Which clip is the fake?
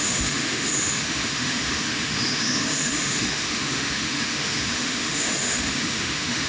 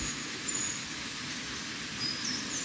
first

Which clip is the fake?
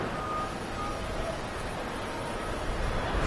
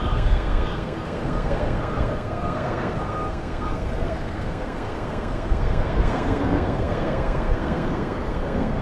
second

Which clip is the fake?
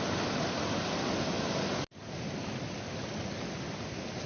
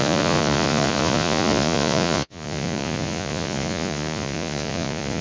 second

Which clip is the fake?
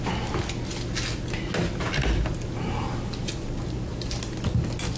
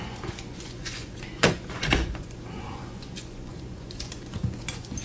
second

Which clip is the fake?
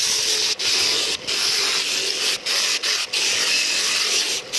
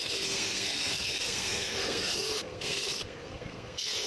second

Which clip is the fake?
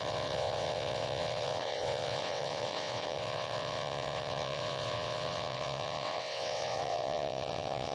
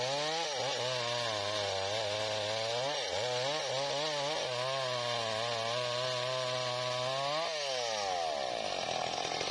first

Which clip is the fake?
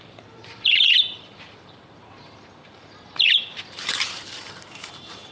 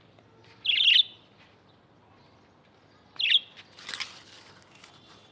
first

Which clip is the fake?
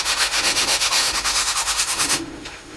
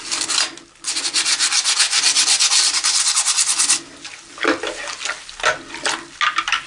first